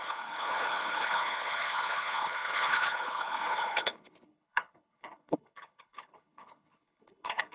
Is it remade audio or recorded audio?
remade